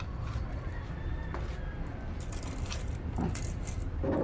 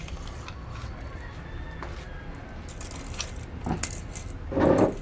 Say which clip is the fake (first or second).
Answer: first